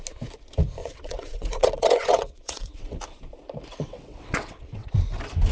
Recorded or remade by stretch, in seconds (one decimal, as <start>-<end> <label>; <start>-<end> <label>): 0.0-0.8 recorded; 0.8-3.0 remade; 3.0-3.7 recorded; 3.7-4.9 remade; 4.9-5.5 recorded

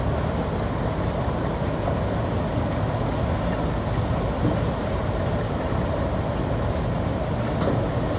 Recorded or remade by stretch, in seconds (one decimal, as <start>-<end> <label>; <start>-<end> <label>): 0.0-4.8 recorded; 4.8-5.6 remade; 5.6-8.2 recorded

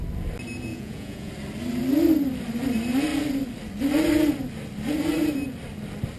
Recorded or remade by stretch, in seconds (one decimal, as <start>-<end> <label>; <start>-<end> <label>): 0.0-0.7 recorded; 0.7-1.3 remade; 1.3-6.2 recorded

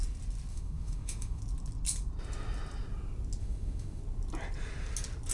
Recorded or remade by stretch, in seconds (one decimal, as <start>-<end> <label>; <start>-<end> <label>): 0.0-0.5 recorded; 0.5-1.4 remade; 1.4-3.4 recorded; 3.4-4.0 remade; 4.0-5.3 recorded

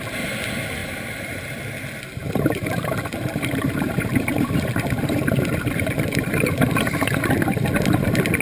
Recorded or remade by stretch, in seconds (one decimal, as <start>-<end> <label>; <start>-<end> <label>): 0.0-0.8 recorded; 0.8-1.6 remade; 1.6-2.2 recorded; 2.2-6.8 remade; 6.8-8.4 recorded

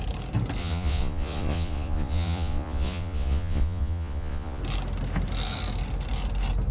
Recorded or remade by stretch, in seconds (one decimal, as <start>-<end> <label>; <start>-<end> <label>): 0.0-0.6 recorded; 0.6-4.6 remade; 4.6-6.7 recorded

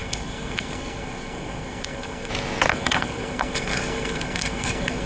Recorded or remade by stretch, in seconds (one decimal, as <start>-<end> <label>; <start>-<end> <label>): 0.0-2.3 remade; 2.3-2.7 recorded; 2.7-5.1 remade